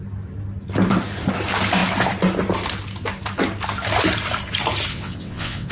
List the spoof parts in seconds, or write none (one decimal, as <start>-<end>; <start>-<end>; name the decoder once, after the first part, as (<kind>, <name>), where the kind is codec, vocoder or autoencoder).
4.9-5.7 (vocoder, WaveNeXt)